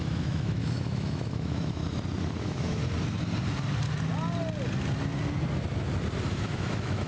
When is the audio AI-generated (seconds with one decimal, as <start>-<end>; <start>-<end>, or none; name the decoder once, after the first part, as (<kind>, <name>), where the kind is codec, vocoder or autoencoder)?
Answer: 0.0-1.8 (autoencoder, DAC-VAE); 2.4-2.8; 6.3-7.1